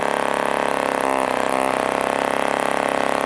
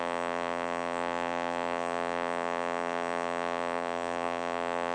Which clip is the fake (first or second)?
second